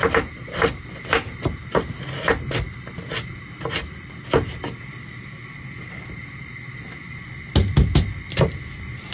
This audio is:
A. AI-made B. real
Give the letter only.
B